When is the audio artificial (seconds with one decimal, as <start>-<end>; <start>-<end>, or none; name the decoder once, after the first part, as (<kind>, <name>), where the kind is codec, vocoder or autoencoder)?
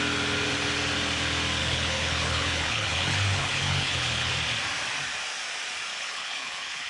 1.6-4.3 (codec, HILCodec); 5.9-6.9